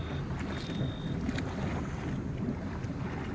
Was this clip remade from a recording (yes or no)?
no